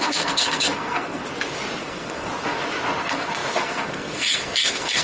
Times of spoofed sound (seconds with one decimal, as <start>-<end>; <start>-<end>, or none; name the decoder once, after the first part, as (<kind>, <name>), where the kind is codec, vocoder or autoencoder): 0.0-1.2 (codec, SNAC); 1.8-2.3; 3.0-5.0